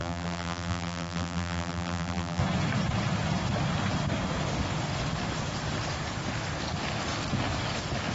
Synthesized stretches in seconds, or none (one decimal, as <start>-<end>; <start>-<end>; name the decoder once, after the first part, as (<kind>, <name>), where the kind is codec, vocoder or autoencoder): 0.0-2.4 (vocoder, BigVGAN v2)